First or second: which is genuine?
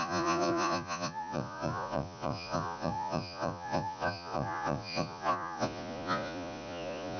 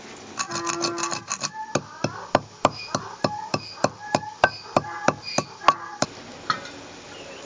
second